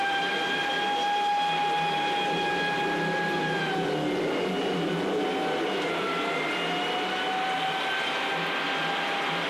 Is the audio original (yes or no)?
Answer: yes